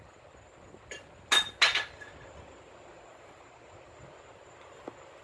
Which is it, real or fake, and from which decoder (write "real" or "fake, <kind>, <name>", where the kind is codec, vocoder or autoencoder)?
real